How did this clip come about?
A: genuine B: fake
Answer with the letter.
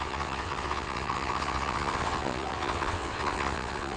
B